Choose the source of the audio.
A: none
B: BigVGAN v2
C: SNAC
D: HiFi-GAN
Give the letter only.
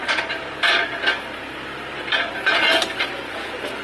B